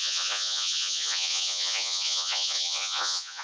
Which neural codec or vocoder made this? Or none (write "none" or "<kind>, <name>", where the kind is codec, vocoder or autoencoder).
vocoder, Vocos